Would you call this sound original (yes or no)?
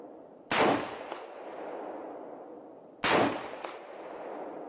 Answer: yes